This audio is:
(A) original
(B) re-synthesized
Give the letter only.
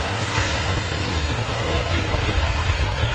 B